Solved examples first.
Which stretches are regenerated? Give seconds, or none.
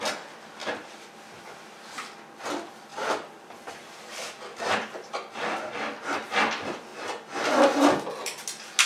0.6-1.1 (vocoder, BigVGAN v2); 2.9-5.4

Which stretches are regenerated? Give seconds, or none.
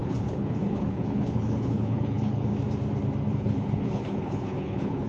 0.0-2.5 (codec, HILCodec); 3.3-5.1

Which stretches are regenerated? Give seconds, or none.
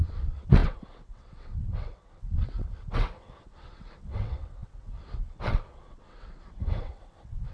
0.0-7.5 (vocoder, WaveNeXt)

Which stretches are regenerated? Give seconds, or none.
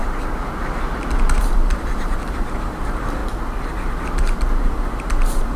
1.4-3.2 (vocoder, BigVGAN v2); 4.6-5.6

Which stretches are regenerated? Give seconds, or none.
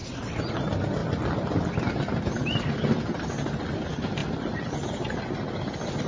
4.2-4.7 (vocoder, BigVGAN v2)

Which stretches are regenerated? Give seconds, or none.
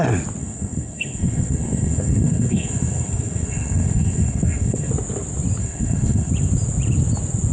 0.4-4.9 (codec, SNAC); 5.6-6.3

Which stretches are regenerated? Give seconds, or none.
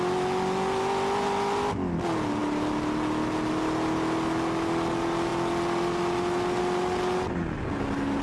none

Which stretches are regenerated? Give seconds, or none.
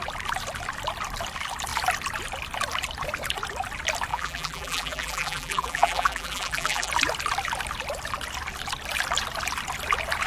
4.1-6.9 (vocoder, BigVGAN v2)